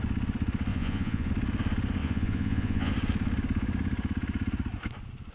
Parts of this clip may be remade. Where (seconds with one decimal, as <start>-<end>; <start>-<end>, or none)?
0.7-1.3; 2.0-2.9